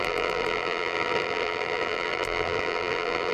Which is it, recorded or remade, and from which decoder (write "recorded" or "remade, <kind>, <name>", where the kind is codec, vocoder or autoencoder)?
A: remade, vocoder, BigVGAN v2